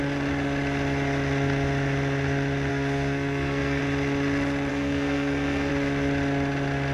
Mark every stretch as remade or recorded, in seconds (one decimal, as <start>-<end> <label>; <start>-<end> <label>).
0.0-2.7 recorded; 2.7-3.8 remade; 3.8-4.7 recorded; 4.7-5.7 remade; 5.7-6.9 recorded